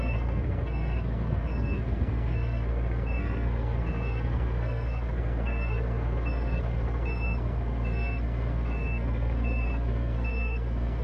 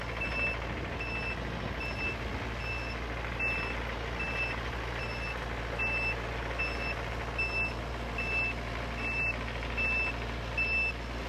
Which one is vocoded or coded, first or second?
first